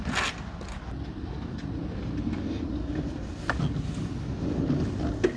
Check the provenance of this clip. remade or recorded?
recorded